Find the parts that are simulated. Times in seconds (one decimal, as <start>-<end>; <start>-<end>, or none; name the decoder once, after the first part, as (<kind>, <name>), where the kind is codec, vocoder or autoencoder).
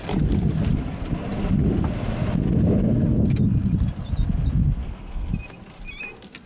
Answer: 4.8-5.3 (codec, SNAC)